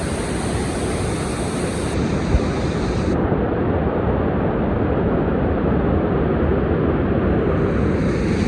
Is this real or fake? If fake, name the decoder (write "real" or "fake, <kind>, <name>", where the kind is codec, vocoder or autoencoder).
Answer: real